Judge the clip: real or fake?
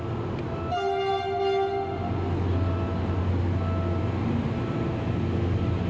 real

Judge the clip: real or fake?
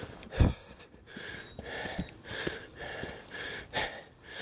real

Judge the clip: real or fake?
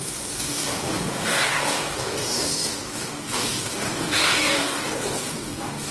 fake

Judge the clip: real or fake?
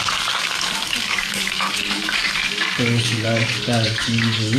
fake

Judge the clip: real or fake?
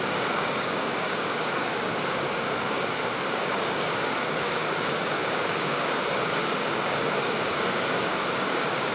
fake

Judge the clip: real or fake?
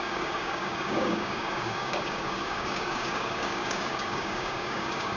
fake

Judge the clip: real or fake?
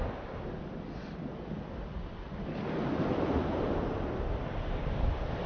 real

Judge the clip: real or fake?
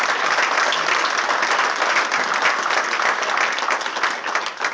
real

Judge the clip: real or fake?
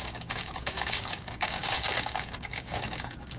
fake